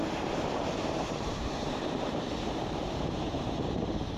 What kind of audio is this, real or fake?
fake